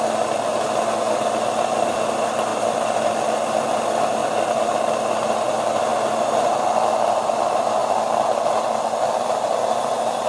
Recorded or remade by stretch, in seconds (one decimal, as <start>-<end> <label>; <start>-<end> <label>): 0.0-2.5 recorded; 2.5-3.2 remade; 3.2-4.2 recorded; 4.2-4.9 remade; 4.9-10.3 recorded